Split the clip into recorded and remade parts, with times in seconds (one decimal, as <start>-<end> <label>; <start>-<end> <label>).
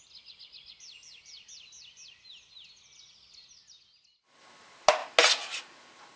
0.0-6.2 recorded